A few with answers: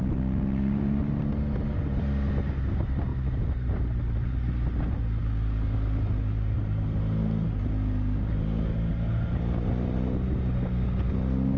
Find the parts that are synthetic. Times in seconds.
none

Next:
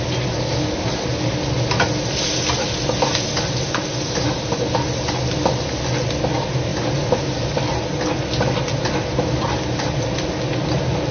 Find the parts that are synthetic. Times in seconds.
none